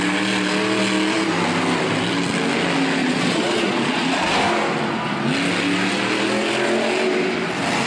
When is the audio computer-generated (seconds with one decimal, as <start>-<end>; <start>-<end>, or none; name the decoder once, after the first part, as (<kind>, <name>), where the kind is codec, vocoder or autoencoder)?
3.0-4.3 (vocoder, Vocos)